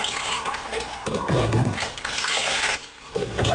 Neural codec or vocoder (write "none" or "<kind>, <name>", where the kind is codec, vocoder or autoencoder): codec, SNAC